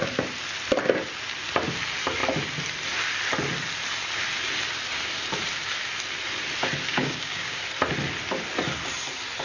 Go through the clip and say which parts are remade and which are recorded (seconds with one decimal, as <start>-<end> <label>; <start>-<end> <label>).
0.0-6.9 recorded; 6.9-7.6 remade; 7.6-9.4 recorded